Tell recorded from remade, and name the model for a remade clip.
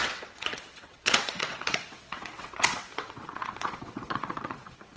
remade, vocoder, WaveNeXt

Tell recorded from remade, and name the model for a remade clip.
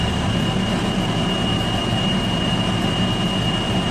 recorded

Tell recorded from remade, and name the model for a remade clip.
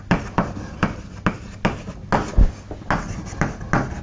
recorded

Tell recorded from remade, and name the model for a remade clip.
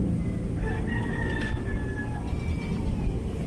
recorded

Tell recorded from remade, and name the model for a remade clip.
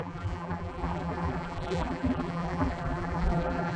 remade, vocoder, BigVGAN v2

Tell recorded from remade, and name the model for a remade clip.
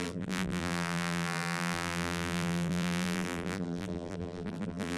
remade, vocoder, BigVGAN v2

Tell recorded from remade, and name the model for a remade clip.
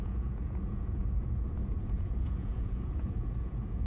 remade, vocoder, Vocos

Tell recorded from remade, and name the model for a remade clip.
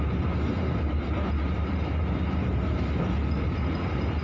recorded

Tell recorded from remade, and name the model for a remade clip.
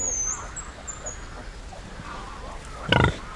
recorded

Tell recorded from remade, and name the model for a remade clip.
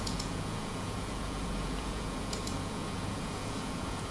remade, vocoder, Vocos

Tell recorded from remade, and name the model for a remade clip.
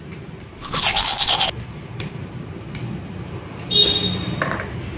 recorded